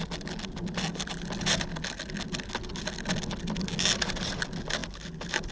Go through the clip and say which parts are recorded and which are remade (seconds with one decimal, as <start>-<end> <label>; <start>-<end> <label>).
0.0-5.5 recorded